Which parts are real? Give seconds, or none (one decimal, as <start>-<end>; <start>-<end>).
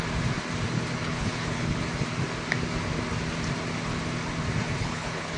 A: 0.0-1.0; 1.8-4.8